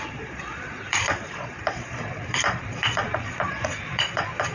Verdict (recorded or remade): remade